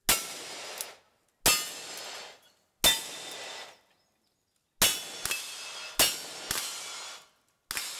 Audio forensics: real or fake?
real